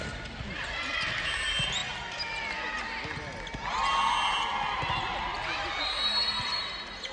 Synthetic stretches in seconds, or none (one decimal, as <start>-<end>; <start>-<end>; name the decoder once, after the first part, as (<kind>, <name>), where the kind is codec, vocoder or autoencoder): none